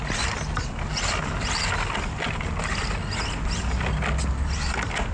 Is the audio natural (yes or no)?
yes